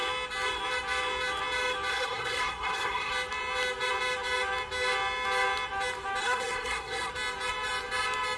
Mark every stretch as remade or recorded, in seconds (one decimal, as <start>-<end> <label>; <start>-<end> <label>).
0.0-1.9 recorded; 1.9-3.1 remade; 3.1-6.2 recorded; 6.2-7.1 remade; 7.1-8.4 recorded